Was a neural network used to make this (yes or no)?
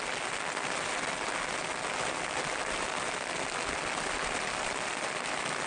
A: no